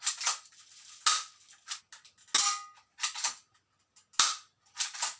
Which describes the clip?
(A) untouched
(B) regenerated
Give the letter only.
A